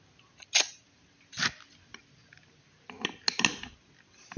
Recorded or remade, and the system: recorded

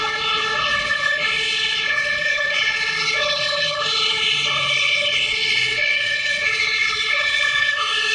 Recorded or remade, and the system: remade, codec, HILCodec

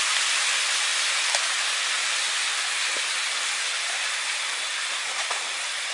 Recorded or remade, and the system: recorded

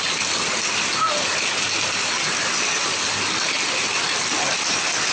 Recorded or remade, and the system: recorded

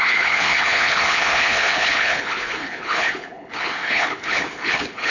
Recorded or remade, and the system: remade, codec, HILCodec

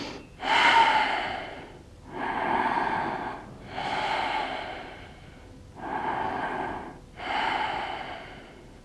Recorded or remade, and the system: recorded